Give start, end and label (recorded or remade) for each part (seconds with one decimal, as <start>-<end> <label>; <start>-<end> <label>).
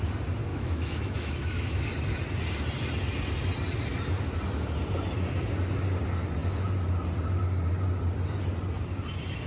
0.0-0.5 recorded; 0.5-1.9 remade; 1.9-9.5 recorded